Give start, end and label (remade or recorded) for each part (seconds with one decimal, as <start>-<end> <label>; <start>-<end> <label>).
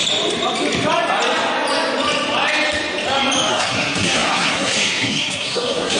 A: 0.0-3.5 recorded; 3.5-6.0 remade